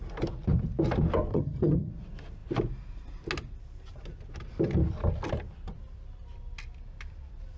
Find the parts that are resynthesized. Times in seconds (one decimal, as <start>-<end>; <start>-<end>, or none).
1.3-1.9